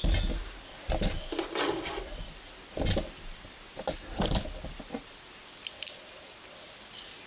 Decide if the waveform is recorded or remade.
recorded